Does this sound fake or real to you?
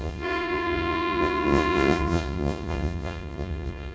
fake